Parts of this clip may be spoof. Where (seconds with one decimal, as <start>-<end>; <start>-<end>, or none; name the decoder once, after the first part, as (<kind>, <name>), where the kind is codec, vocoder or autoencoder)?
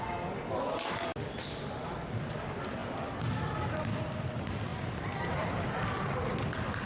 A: none